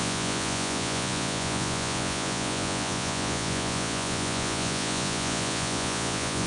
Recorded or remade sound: remade